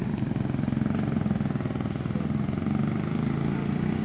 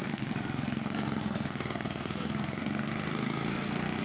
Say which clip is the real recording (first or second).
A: first